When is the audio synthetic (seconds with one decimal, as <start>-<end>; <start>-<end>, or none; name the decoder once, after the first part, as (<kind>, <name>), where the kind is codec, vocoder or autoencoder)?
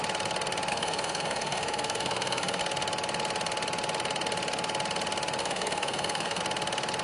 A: 0.7-2.6 (codec, SNAC); 5.4-6.4